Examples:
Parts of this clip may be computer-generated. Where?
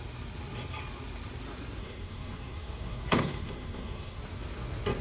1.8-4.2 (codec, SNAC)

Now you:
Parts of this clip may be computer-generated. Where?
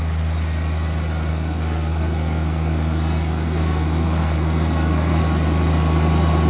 1.3-5.2 (codec, SNAC)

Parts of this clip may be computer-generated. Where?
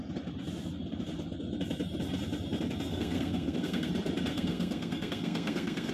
2.9-3.9 (codec, SNAC); 4.3-5.9